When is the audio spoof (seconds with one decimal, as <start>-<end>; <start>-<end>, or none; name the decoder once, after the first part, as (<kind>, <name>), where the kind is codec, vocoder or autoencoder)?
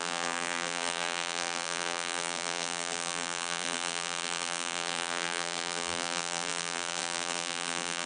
0.0-8.1 (vocoder, BigVGAN v2)